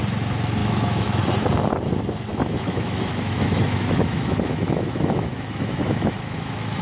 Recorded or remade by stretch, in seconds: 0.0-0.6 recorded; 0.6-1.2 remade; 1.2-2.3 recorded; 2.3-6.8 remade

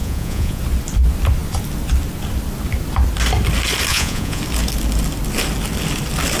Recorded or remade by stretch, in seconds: 0.0-0.6 remade; 0.6-3.9 recorded; 3.9-4.4 remade; 4.4-6.4 recorded

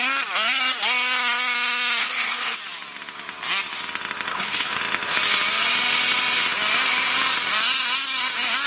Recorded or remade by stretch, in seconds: 0.0-2.0 recorded; 2.0-2.6 remade; 2.6-4.3 recorded; 4.3-4.8 remade; 4.8-8.7 recorded

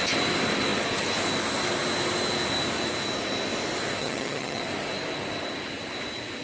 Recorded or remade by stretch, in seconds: 0.0-4.0 recorded; 4.0-4.6 remade; 4.6-6.4 recorded